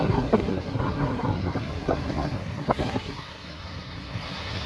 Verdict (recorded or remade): remade